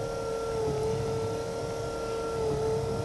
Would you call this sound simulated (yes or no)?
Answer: no